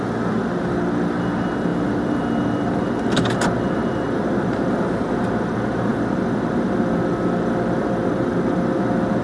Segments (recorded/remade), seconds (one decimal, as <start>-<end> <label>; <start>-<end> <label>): 0.0-9.2 recorded